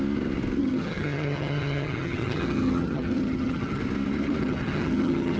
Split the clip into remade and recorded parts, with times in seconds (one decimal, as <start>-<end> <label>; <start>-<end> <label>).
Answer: 0.0-0.6 recorded; 0.6-3.8 remade; 3.8-4.4 recorded; 4.4-5.4 remade